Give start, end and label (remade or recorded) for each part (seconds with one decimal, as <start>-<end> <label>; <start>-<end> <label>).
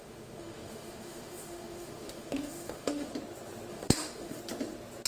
0.0-3.1 remade; 3.1-3.7 recorded; 3.7-4.4 remade; 4.4-5.1 recorded